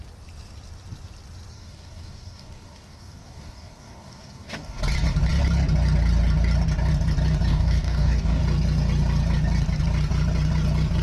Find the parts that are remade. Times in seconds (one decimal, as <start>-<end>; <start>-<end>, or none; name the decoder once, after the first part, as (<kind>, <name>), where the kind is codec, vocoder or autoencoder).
1.5-4.8 (codec, DAC); 7.5-8.4